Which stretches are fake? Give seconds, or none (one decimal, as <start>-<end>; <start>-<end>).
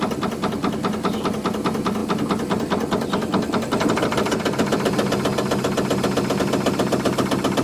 none